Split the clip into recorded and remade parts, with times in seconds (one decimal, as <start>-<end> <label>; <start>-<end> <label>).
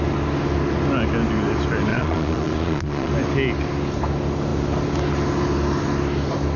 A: 0.0-1.9 recorded; 1.9-3.1 remade; 3.1-6.6 recorded